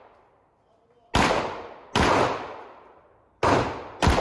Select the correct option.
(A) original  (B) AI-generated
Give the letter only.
A